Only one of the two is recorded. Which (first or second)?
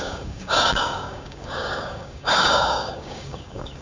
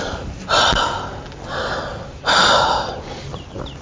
second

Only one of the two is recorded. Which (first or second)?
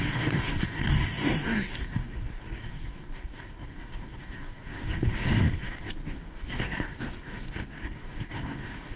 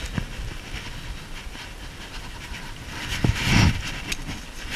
second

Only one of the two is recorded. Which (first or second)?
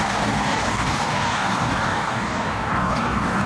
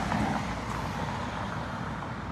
second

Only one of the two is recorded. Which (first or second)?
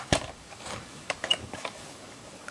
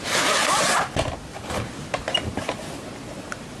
second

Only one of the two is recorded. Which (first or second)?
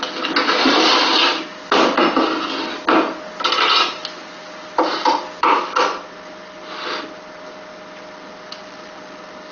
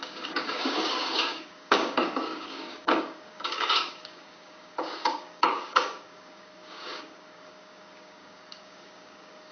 first